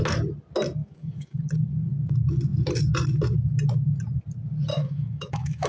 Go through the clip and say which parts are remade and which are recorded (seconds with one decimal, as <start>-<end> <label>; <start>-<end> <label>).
0.0-0.8 recorded; 0.8-1.4 remade; 1.4-4.7 recorded; 4.7-5.7 remade